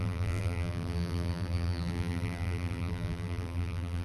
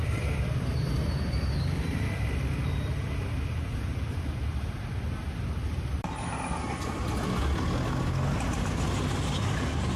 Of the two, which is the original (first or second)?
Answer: second